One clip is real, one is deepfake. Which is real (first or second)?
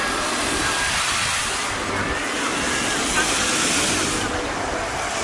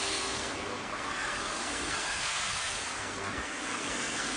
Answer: first